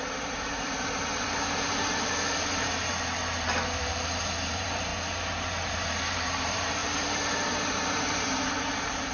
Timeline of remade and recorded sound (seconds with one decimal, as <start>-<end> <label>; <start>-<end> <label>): 0.0-4.9 remade; 4.9-5.4 recorded; 5.4-9.1 remade